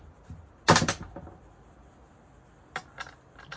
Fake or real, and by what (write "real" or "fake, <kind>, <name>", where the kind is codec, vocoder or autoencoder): real